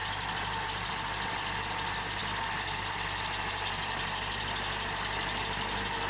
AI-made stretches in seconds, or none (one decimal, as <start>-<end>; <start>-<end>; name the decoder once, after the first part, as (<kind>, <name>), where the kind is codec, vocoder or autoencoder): none